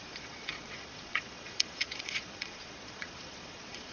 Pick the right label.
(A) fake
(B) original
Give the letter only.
A